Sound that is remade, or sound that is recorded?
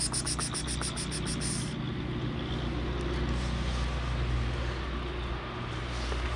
recorded